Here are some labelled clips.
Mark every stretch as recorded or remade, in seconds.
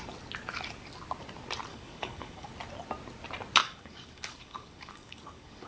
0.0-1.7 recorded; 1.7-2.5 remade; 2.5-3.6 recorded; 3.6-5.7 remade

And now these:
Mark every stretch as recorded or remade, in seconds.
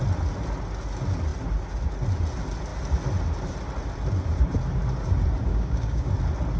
0.0-5.5 recorded; 5.5-6.1 remade; 6.1-6.6 recorded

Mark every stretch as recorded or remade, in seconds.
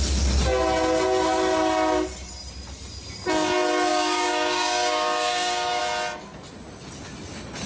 0.0-3.9 recorded; 3.9-5.8 remade; 5.8-7.7 recorded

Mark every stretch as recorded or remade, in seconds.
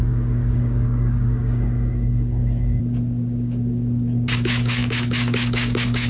0.0-6.1 remade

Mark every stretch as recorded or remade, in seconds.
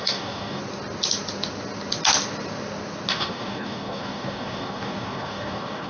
0.0-0.6 remade; 0.6-3.1 recorded; 3.1-5.9 remade